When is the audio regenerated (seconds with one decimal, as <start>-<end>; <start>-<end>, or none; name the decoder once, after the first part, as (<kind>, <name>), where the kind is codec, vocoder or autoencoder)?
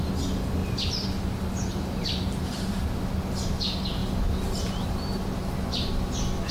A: 0.6-1.2 (vocoder, BigVGAN v2); 1.7-2.8; 4.0-5.5